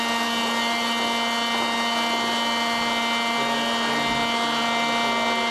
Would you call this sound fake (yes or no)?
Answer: no